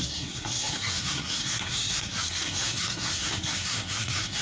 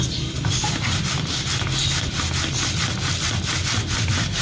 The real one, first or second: second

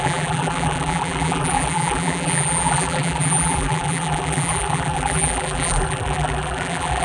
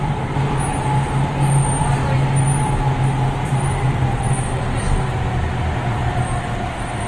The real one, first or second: second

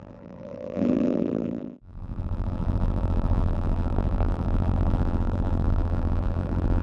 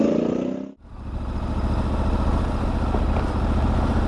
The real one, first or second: second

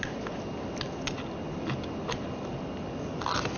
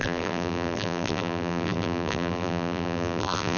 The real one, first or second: first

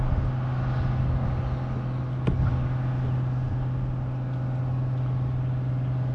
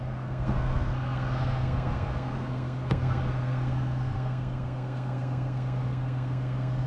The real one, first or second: first